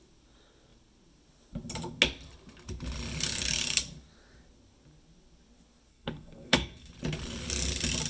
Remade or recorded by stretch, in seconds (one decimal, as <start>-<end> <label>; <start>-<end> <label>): 0.0-5.9 recorded; 5.9-6.9 remade; 6.9-8.1 recorded